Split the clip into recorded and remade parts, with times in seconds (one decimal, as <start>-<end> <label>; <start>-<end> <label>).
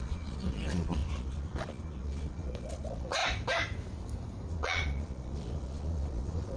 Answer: 0.0-3.2 remade; 3.2-4.5 recorded; 4.5-6.6 remade